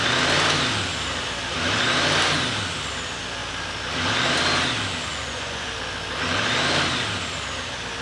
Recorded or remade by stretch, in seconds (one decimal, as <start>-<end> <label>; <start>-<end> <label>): 0.0-5.1 recorded; 5.1-5.7 remade; 5.7-8.0 recorded